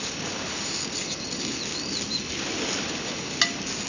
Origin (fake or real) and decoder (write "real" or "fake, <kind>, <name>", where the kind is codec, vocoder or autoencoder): real